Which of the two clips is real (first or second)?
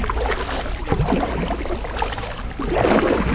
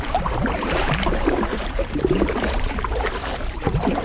first